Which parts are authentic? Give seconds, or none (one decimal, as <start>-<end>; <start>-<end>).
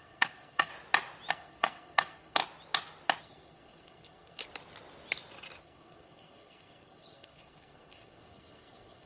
0.7-1.3; 2.4-3.2; 4.4-5.6